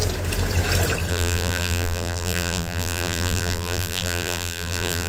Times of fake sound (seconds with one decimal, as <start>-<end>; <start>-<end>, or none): 1.1-5.1